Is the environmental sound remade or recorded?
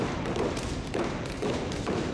remade